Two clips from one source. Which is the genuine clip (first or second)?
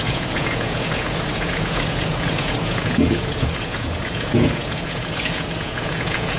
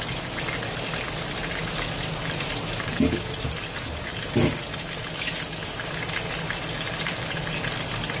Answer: second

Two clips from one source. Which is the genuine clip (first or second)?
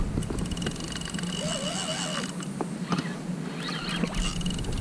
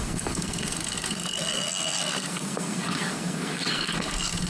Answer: first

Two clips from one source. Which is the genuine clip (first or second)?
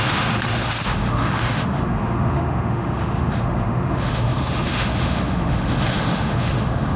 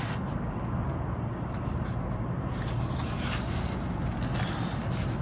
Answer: second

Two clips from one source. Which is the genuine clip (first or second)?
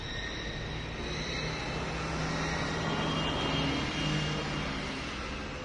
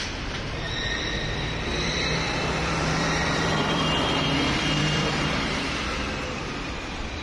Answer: first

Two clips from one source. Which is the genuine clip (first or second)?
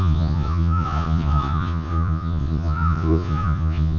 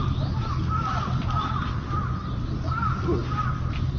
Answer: second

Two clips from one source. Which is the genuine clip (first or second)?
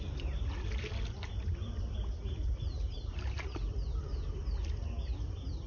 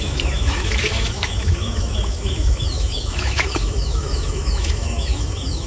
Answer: first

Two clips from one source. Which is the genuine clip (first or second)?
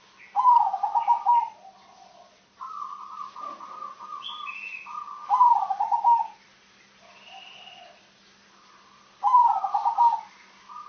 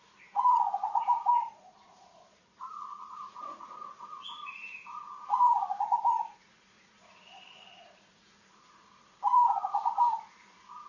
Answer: first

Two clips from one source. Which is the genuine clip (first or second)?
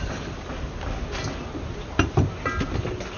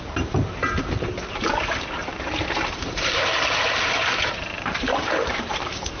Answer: first